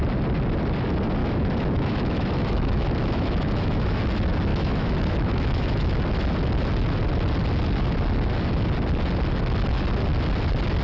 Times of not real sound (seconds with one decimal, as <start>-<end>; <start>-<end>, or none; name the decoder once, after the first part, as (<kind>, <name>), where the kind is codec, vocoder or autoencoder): 1.2-4.0 (autoencoder, DAC-VAE); 4.5-6.0